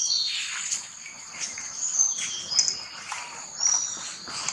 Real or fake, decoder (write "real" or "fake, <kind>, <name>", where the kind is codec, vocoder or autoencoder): real